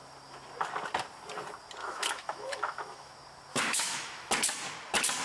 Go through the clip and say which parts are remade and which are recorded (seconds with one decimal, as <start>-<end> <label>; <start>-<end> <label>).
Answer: 0.0-1.8 recorded; 1.8-3.1 remade; 3.1-3.5 recorded; 3.5-4.3 remade; 4.3-5.2 recorded